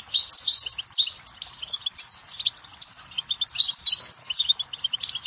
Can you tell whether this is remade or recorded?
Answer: recorded